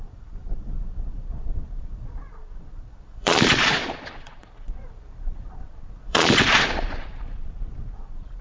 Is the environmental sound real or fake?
fake